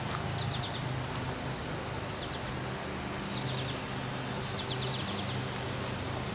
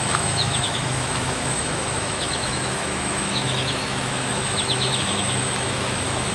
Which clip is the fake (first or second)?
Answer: second